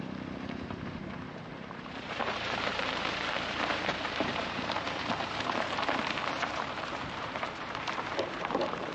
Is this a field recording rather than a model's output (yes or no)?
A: no